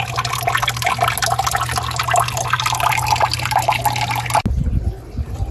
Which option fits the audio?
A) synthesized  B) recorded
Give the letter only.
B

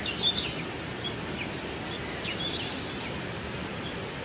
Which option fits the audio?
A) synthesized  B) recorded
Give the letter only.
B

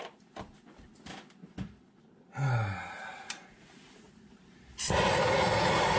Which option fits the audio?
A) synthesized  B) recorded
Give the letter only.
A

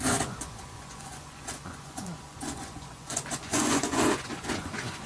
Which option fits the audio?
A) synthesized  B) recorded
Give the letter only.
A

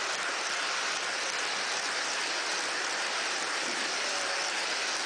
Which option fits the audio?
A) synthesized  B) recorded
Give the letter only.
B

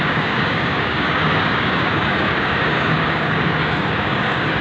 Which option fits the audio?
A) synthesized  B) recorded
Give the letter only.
A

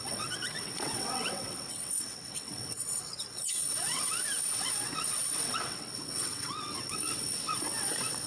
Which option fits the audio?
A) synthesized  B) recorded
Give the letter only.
A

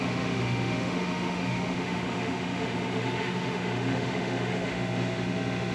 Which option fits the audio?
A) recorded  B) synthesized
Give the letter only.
B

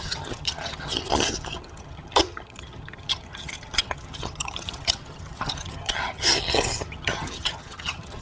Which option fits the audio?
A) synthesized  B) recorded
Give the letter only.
A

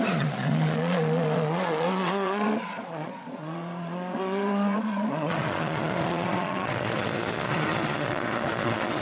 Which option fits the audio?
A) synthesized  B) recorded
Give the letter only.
A